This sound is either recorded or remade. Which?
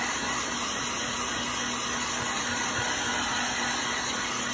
recorded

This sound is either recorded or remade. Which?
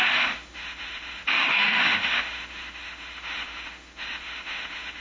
remade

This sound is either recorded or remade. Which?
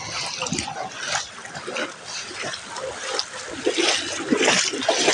recorded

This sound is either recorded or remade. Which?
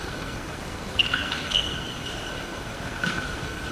remade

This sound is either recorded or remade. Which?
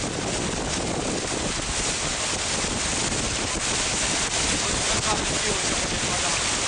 recorded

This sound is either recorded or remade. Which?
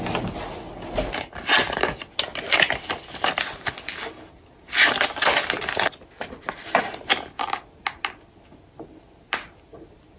recorded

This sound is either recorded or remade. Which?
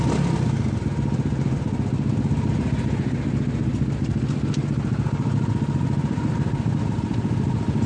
recorded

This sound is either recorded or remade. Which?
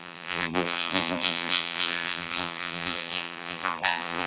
remade